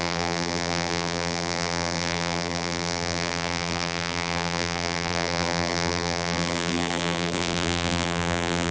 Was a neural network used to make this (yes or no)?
yes